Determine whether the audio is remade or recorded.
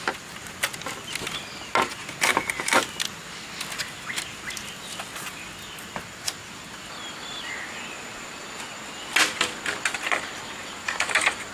recorded